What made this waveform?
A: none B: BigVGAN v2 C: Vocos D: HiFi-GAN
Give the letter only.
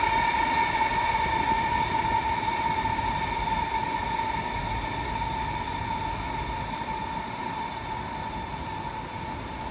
A